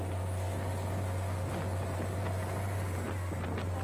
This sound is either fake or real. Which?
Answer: real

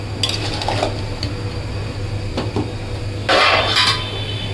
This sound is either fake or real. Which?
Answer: real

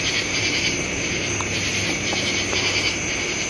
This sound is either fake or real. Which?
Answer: fake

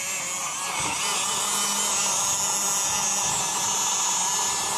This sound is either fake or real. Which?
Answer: real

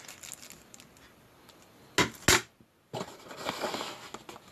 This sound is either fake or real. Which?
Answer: real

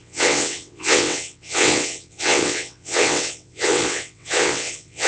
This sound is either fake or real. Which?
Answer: fake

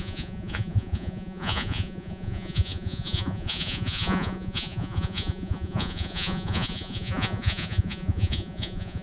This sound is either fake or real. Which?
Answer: fake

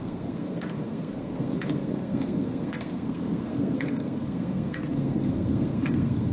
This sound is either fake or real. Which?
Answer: fake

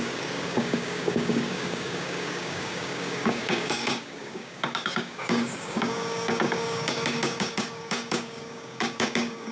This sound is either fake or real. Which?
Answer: fake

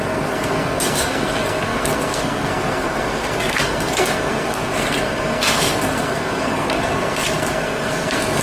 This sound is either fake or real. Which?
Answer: fake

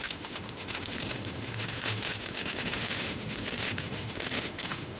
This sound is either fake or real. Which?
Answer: fake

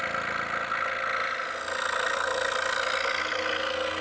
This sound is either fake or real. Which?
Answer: real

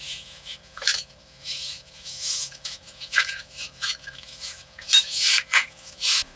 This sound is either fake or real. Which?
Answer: fake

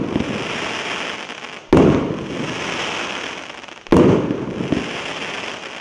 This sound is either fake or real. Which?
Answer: real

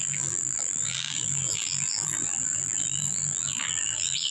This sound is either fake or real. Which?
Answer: fake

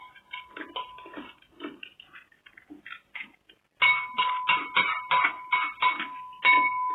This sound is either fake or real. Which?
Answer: real